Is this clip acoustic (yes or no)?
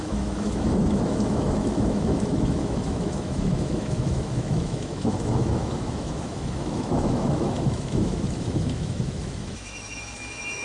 no